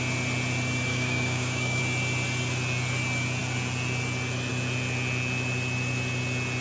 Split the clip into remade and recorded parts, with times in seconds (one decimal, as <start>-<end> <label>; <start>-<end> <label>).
0.0-0.9 recorded; 0.9-1.8 remade; 1.8-6.6 recorded